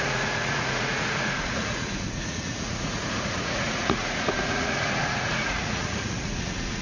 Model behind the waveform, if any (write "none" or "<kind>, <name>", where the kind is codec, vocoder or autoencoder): vocoder, Vocos